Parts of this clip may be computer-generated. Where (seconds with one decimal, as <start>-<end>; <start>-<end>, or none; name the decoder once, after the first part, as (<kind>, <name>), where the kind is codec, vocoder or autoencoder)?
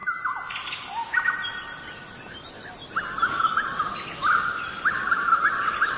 none